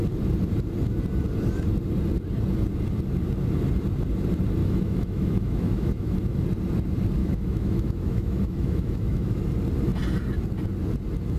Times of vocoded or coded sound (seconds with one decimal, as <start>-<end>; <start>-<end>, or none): 4.6-6.4; 7.2-9.4